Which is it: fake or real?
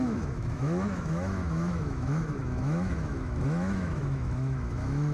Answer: fake